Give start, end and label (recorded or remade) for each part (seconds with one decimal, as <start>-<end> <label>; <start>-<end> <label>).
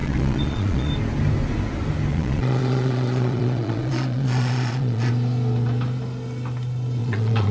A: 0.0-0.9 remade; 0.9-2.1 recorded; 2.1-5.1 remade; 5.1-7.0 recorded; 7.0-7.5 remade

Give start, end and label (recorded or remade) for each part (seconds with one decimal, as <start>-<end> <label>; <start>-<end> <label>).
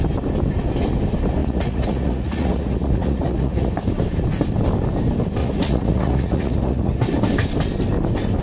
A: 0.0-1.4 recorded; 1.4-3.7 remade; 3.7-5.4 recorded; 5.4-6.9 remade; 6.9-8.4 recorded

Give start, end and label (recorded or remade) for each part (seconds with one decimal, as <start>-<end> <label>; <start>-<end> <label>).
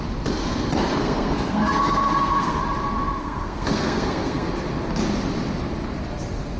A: 0.0-1.0 recorded; 1.0-2.6 remade; 2.6-3.2 recorded; 3.2-4.5 remade; 4.5-6.6 recorded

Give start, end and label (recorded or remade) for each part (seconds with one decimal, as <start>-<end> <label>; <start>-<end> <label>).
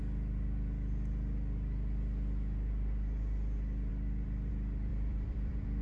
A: 0.0-3.9 recorded; 3.9-4.5 remade; 4.5-4.9 recorded; 4.9-5.8 remade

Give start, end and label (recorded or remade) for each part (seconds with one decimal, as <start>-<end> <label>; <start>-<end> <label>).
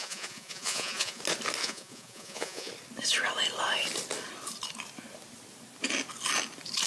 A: 0.0-1.2 remade; 1.2-1.6 recorded; 1.6-2.7 remade; 2.7-6.9 recorded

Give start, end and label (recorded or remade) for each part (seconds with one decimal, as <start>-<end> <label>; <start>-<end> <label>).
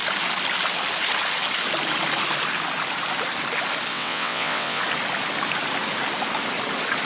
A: 0.0-3.9 recorded; 3.9-4.8 remade; 4.8-7.1 recorded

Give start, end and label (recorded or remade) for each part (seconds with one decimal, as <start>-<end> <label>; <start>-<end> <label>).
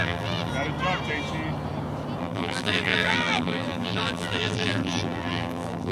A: 0.0-0.5 remade; 0.5-2.2 recorded; 2.2-5.9 remade